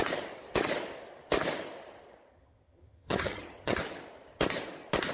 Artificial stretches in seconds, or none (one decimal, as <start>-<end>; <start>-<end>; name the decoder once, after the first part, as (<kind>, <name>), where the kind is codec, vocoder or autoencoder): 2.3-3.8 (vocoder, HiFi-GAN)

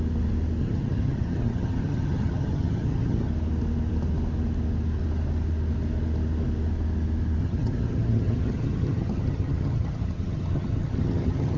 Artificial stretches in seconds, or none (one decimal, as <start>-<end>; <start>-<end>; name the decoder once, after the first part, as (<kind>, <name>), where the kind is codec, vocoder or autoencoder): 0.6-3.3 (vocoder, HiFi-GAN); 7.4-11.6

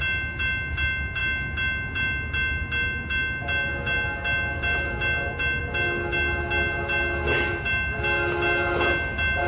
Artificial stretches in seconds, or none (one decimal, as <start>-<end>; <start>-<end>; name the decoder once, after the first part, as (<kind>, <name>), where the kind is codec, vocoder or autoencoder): none